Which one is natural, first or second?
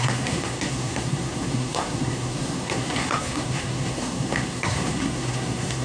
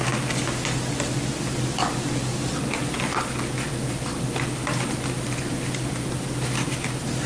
second